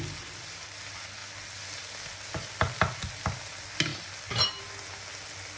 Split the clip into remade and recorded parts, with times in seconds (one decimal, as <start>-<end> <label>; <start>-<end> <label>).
0.0-5.6 recorded